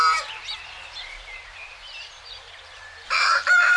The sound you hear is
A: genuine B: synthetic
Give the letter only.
B